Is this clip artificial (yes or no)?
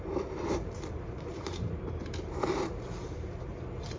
yes